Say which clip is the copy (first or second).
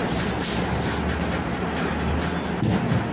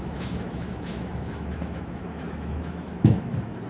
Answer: second